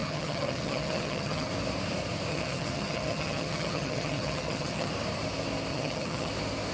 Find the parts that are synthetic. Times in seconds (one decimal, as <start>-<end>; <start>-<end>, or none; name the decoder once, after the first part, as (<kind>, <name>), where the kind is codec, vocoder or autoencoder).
0.0-1.5 (vocoder, HiFi-GAN); 2.3-4.9; 5.7-6.3